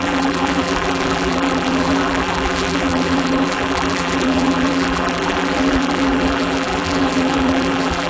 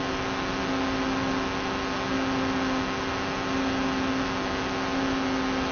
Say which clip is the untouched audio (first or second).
second